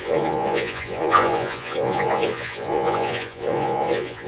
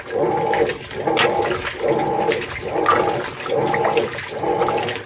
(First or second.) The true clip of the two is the second